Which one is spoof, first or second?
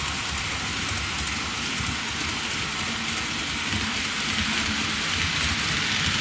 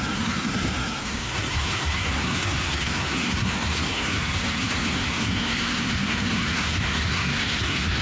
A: second